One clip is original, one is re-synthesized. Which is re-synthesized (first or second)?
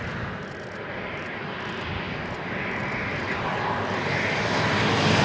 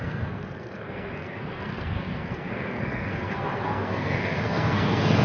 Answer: second